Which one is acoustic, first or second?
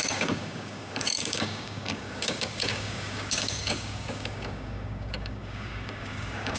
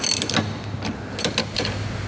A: second